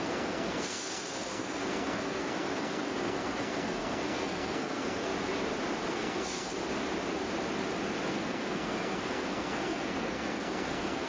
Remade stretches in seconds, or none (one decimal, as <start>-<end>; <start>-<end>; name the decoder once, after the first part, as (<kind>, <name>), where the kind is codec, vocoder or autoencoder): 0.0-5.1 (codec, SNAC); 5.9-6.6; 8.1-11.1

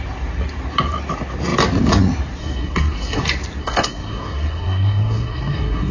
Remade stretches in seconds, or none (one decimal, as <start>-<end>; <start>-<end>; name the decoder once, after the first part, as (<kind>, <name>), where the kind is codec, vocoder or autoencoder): 2.4-3.2 (codec, SNAC); 3.6-5.9

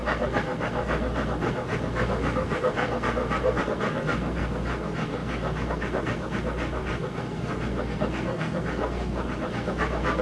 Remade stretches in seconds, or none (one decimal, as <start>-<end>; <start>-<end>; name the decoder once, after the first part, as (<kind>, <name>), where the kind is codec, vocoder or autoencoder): 0.0-10.2 (codec, SNAC)

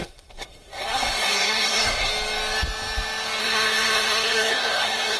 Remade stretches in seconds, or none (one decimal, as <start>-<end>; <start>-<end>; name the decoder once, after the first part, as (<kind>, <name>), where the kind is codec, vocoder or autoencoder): 0.0-2.1 (codec, SNAC); 3.4-5.2

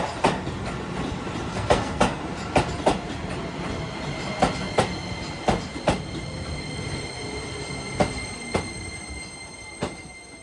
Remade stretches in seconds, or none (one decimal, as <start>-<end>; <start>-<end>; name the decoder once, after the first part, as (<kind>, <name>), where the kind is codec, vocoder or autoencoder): 1.5-2.2 (codec, SNAC)

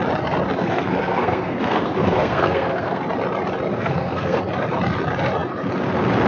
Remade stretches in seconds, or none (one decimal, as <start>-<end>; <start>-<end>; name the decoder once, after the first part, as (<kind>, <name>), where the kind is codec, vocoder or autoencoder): 0.6-3.0 (codec, SNAC); 3.7-4.4

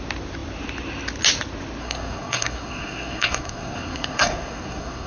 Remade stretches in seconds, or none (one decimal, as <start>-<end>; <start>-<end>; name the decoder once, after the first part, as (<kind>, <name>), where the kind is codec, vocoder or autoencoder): 1.8-5.1 (codec, SNAC)

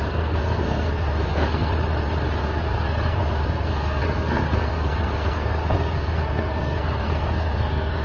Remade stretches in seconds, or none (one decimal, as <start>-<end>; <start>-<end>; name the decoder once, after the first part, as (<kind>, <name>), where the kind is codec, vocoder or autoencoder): 0.0-1.7 (codec, SNAC); 2.4-8.0